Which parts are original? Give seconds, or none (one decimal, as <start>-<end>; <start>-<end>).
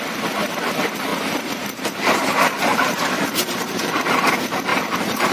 0.0-1.1; 4.3-4.7